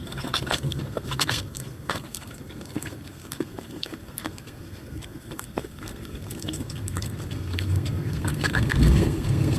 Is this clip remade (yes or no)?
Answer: yes